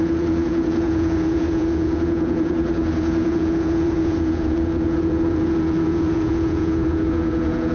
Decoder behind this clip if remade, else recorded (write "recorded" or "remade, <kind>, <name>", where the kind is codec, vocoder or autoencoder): remade, vocoder, Vocos